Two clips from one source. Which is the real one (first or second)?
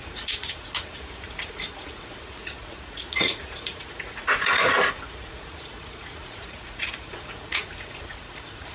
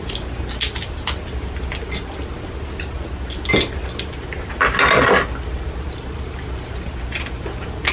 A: second